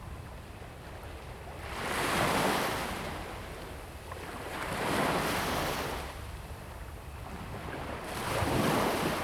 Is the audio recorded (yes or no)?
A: yes